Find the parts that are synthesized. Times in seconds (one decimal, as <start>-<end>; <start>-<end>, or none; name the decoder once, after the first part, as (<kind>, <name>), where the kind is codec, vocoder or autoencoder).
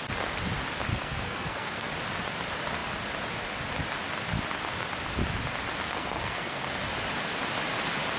0.9-1.9 (codec, SNAC); 5.8-6.8